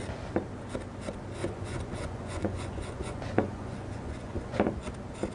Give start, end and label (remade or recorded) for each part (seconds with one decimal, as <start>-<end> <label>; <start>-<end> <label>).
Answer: 0.0-1.4 recorded; 1.4-4.6 remade; 4.6-5.3 recorded